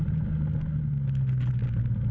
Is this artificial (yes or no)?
no